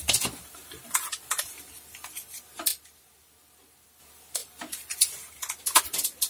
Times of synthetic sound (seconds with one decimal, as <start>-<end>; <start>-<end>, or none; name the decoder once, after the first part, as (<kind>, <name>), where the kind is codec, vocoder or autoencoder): none